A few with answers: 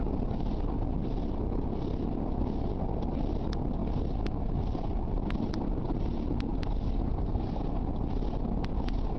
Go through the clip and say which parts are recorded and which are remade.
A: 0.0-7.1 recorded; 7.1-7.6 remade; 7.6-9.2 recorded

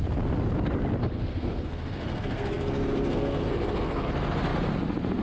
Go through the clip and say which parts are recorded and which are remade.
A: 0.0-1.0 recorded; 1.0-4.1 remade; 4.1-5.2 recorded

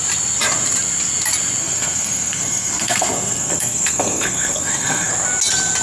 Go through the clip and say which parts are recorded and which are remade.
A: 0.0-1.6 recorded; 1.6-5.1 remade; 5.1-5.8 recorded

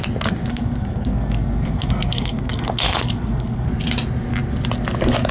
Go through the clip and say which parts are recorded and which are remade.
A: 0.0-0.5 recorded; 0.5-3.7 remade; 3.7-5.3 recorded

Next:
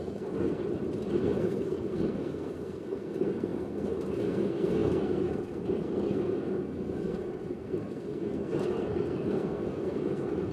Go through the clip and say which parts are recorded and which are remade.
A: 0.0-0.6 remade; 0.6-1.2 recorded; 1.2-10.5 remade